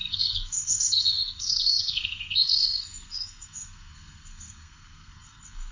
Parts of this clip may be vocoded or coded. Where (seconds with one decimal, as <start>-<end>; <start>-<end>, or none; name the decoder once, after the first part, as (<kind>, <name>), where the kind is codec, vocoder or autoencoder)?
0.0-5.7 (codec, SNAC)